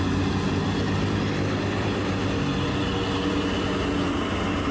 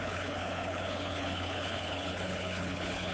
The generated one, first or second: second